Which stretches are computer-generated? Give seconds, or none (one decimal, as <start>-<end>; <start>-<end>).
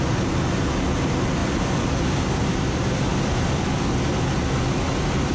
1.4-2.0; 3.1-3.9